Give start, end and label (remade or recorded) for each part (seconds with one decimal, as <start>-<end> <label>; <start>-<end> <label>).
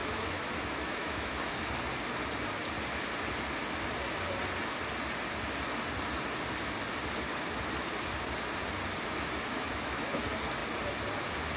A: 0.0-1.5 remade; 1.5-9.5 recorded; 9.5-10.2 remade; 10.2-11.6 recorded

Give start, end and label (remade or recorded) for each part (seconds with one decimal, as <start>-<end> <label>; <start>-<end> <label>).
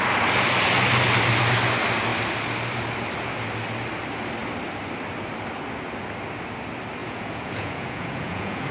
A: 0.0-7.0 recorded; 7.0-8.7 remade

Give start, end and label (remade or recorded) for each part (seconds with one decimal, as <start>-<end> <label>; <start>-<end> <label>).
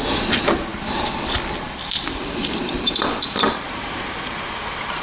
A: 0.0-0.7 recorded; 0.7-3.7 remade; 3.7-5.0 recorded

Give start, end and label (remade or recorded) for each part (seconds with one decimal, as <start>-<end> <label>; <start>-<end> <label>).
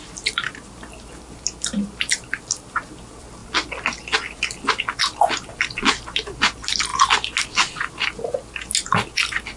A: 0.0-9.6 recorded